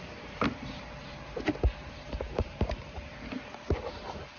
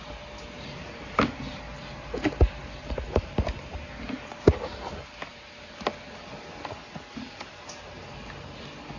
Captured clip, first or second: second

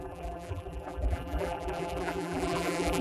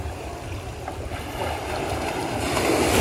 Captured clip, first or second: second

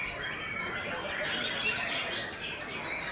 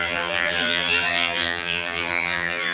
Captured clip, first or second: first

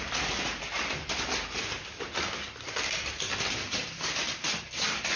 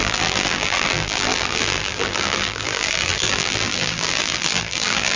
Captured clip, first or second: first